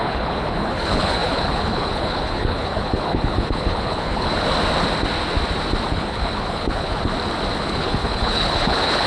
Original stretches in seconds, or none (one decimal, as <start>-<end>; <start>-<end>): 4.3-5.9; 7.1-7.6